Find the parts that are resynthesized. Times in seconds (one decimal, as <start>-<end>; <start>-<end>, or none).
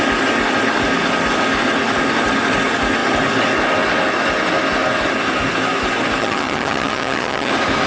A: 6.2-7.5